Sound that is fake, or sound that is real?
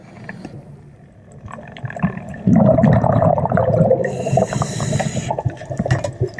real